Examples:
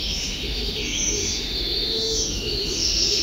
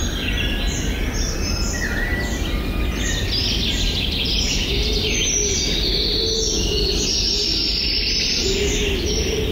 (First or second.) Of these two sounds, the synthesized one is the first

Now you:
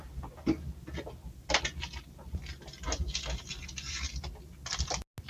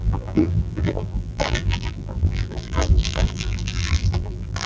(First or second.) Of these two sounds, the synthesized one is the second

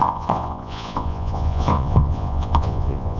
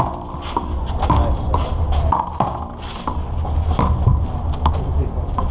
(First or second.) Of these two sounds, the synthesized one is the first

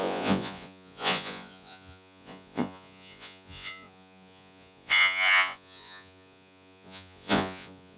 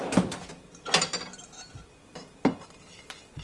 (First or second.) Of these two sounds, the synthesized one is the first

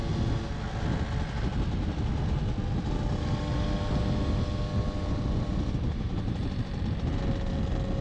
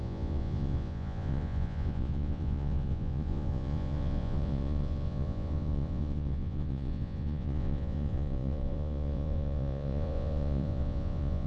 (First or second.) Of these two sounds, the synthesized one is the second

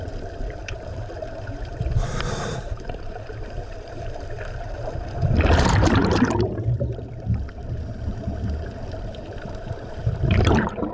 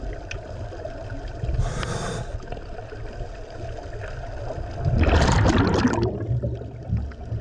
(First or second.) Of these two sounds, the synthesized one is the first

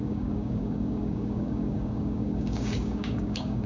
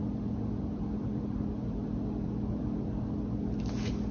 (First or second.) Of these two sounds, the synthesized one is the first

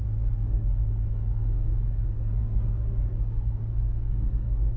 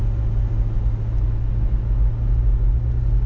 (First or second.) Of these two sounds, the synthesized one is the first